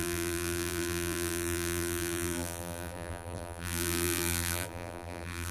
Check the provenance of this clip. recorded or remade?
remade